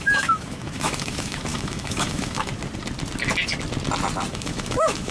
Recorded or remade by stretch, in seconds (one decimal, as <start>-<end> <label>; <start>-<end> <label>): 0.0-2.5 remade; 2.5-4.3 recorded; 4.3-5.1 remade